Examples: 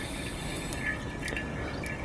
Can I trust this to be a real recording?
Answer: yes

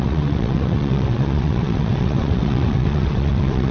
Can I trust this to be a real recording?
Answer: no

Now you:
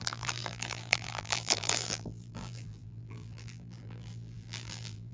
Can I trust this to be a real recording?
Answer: no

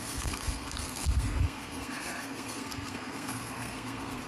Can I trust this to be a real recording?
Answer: no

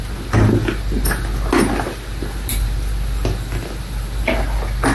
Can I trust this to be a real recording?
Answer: yes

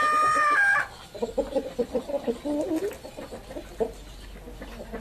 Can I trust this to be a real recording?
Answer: yes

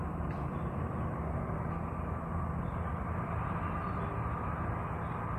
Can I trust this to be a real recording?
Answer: yes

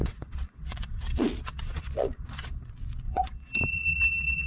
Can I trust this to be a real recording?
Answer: no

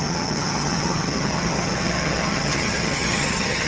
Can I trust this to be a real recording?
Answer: no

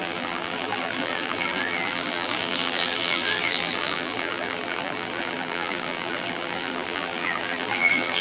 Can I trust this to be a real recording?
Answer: no